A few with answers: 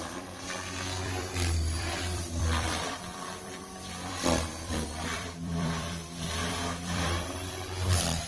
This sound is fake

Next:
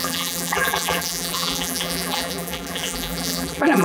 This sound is fake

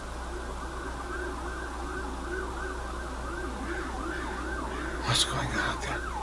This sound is real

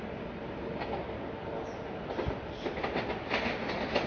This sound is real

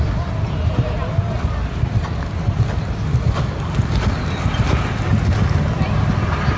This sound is real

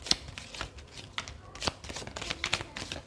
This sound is real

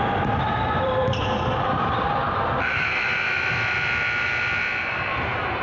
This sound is fake